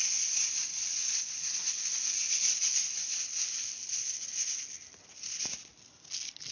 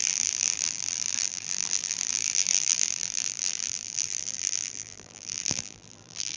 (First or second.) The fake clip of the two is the second